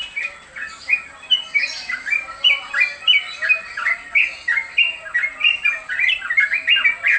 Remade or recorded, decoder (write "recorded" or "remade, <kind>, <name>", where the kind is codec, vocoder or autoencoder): recorded